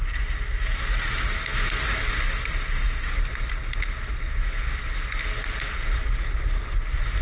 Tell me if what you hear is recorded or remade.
recorded